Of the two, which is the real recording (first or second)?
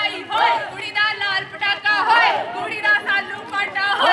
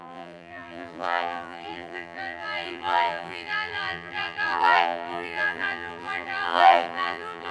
first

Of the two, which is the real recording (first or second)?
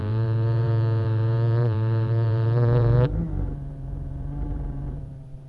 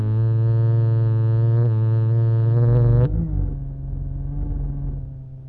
second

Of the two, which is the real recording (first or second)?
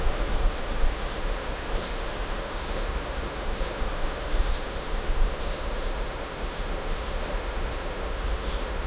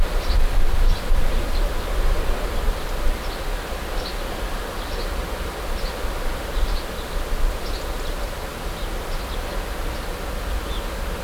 second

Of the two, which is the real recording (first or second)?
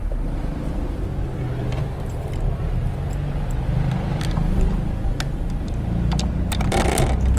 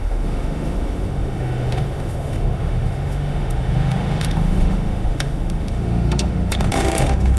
first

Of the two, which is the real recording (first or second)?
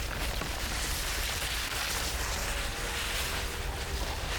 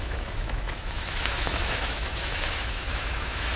first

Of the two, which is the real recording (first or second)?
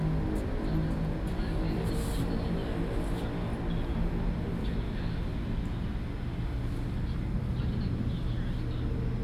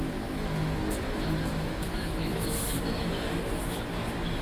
first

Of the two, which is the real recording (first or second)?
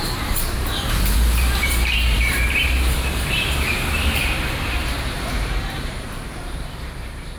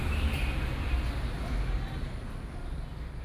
second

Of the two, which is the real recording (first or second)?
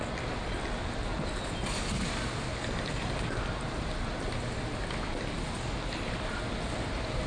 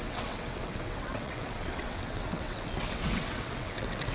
first